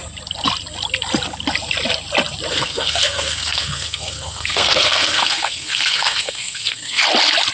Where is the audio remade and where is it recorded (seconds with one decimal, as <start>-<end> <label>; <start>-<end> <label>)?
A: 0.0-2.5 recorded; 2.5-7.0 remade; 7.0-7.5 recorded